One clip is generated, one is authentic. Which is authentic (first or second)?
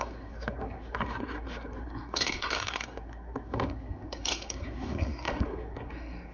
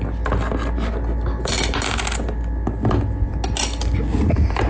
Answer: second